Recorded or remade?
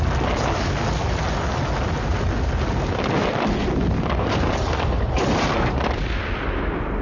recorded